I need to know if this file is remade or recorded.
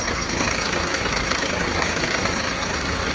remade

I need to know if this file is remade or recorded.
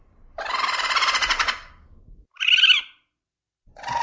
recorded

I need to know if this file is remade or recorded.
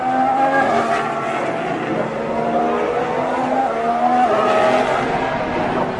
recorded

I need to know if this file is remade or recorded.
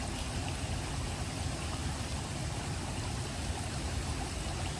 recorded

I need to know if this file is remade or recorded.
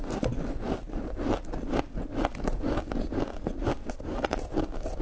recorded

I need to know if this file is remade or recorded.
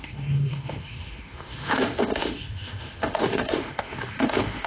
remade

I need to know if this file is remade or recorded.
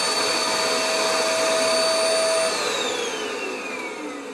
recorded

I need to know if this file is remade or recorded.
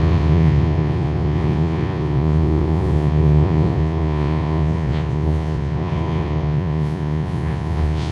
remade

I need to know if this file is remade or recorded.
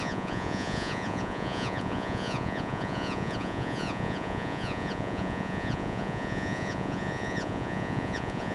remade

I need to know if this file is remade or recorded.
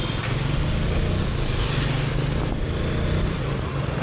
recorded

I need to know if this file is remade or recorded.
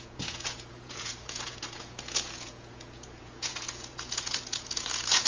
remade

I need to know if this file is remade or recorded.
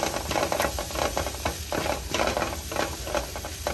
recorded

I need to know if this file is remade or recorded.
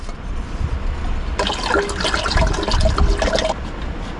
recorded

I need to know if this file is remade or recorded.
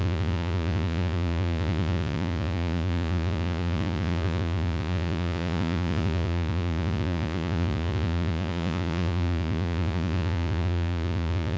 remade